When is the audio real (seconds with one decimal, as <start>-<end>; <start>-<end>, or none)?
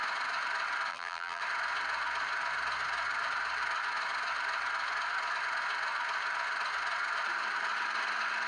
0.0-0.9; 1.4-8.5